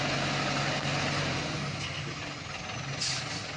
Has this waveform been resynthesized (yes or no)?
no